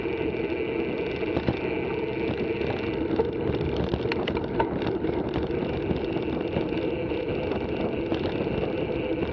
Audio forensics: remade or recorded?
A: recorded